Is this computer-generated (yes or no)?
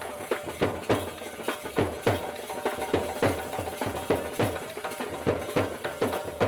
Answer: yes